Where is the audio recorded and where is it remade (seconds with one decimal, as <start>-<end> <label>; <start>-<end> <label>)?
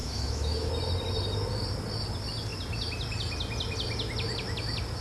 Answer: 0.0-0.7 remade; 0.7-5.0 recorded